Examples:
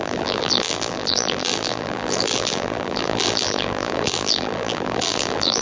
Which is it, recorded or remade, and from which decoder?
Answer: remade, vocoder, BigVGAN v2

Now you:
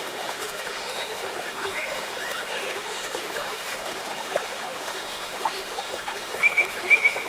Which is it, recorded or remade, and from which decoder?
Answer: remade, autoencoder, DAC-VAE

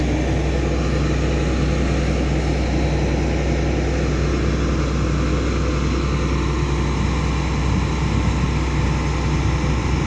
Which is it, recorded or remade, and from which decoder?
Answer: recorded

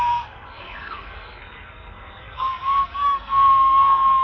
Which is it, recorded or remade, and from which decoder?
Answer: remade, codec, SNAC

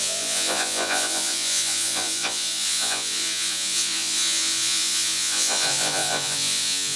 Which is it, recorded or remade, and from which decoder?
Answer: remade, vocoder, Vocos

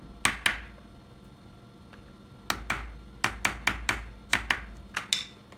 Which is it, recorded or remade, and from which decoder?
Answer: recorded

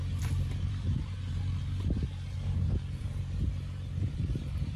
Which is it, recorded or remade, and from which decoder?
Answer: remade, vocoder, BigVGAN v2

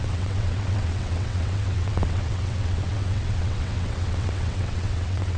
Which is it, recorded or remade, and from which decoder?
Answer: remade, vocoder, WaveNeXt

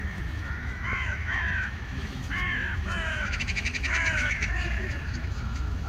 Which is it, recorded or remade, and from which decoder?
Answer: remade, autoencoder, DAC-VAE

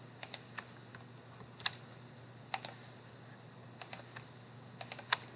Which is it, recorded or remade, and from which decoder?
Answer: recorded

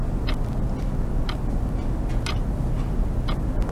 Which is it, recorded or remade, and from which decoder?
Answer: recorded